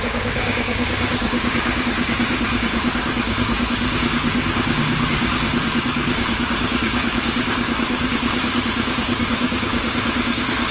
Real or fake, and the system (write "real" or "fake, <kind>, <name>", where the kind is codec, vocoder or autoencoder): fake, codec, DAC